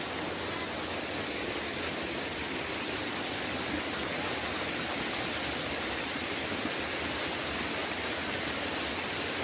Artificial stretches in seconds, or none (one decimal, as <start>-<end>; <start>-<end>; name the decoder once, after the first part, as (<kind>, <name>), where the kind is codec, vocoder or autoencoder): none